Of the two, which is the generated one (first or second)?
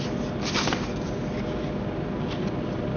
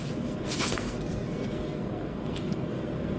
second